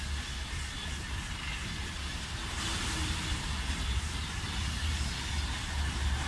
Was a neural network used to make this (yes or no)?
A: no